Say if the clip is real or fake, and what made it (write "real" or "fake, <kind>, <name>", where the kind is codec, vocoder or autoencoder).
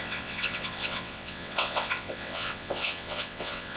fake, vocoder, WaveNeXt